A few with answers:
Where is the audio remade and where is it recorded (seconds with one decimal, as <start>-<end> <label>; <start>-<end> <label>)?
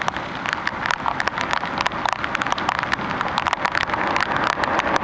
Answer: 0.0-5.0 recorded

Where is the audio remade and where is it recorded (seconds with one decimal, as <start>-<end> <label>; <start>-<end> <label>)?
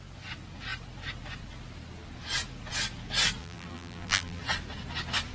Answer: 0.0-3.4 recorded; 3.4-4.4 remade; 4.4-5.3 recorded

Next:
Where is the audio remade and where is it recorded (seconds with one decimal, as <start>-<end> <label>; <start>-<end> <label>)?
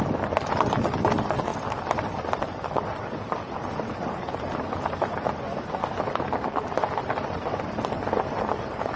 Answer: 0.0-9.0 remade